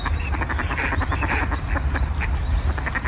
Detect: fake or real real